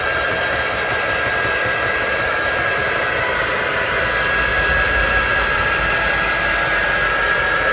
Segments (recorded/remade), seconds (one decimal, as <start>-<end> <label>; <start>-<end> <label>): 0.0-2.3 recorded; 2.3-3.2 remade; 3.2-4.5 recorded; 4.5-5.8 remade; 5.8-7.7 recorded

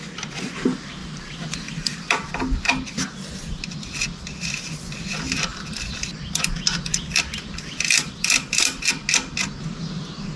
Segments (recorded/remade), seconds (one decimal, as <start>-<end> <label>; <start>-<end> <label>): 0.0-1.0 recorded; 1.0-2.3 remade; 2.3-5.5 recorded; 5.5-8.9 remade; 8.9-10.4 recorded

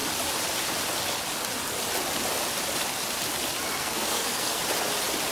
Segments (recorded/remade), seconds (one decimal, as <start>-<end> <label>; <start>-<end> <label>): 0.0-3.8 recorded; 3.8-4.6 remade; 4.6-5.3 recorded

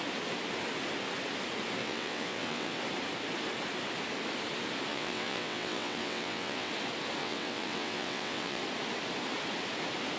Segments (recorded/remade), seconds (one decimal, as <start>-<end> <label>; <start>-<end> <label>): 0.0-1.8 recorded; 1.8-2.8 remade; 2.8-4.9 recorded; 4.9-6.7 remade; 6.7-7.2 recorded; 7.2-8.6 remade; 8.6-10.2 recorded

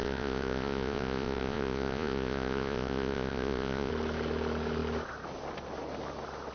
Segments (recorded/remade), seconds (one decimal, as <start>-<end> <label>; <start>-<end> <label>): 0.0-3.9 remade; 3.9-6.5 recorded

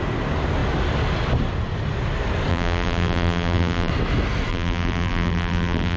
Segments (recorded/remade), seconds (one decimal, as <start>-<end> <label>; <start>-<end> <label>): 0.0-2.5 recorded; 2.5-3.9 remade; 3.9-4.5 recorded; 4.5-6.0 remade